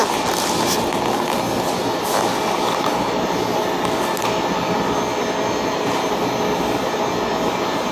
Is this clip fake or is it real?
real